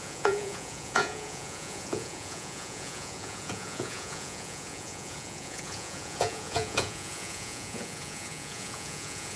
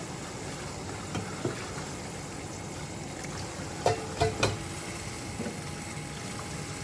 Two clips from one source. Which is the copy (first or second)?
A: first